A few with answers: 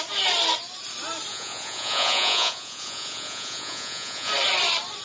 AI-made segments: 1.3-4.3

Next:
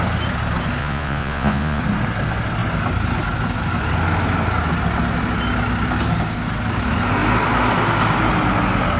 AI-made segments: 0.8-1.8

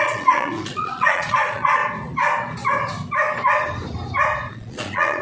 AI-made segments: 0.0-1.8; 4.5-5.2

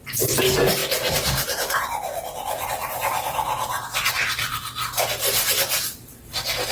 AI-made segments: none